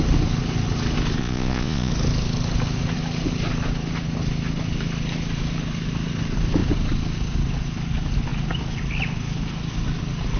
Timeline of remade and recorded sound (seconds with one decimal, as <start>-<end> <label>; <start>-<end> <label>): 0.0-1.2 recorded; 1.2-1.9 remade; 1.9-10.4 recorded